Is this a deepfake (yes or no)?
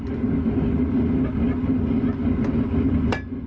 no